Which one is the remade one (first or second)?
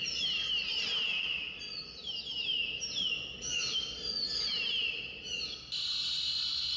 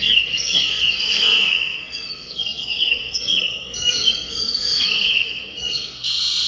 second